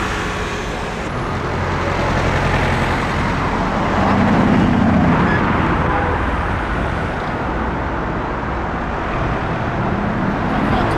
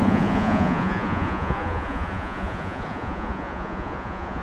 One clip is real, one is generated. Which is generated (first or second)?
second